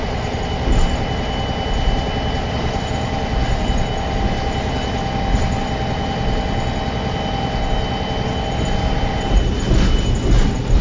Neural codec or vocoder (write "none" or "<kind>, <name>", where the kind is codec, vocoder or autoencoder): none